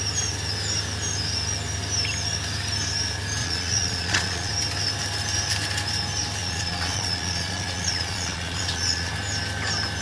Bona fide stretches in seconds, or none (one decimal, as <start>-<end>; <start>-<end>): 0.0-3.4; 4.5-6.4; 9.1-10.0